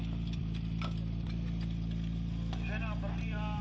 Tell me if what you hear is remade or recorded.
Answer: recorded